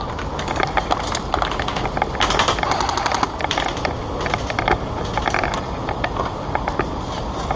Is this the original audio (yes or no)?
yes